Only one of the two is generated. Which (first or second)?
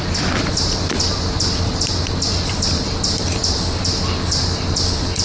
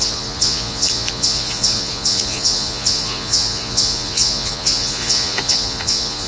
second